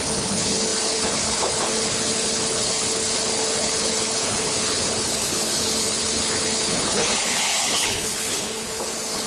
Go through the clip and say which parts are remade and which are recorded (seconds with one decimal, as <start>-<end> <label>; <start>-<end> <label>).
0.0-9.3 remade